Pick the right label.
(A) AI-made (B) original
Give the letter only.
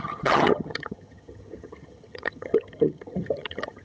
A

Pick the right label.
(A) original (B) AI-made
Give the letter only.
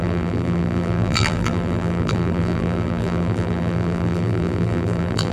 B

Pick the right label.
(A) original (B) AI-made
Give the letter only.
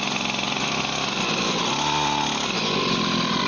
A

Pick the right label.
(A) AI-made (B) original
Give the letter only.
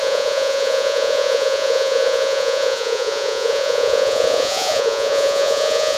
A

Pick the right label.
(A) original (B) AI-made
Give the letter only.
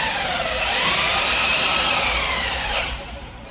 B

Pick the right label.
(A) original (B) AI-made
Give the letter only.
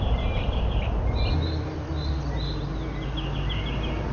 A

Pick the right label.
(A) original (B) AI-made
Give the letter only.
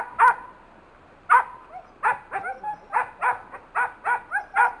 A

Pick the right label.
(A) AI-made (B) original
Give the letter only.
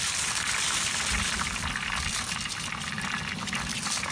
B